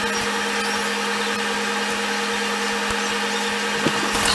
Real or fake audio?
real